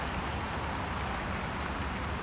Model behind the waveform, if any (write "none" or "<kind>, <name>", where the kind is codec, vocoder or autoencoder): none